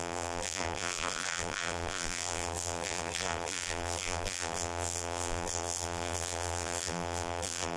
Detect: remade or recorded remade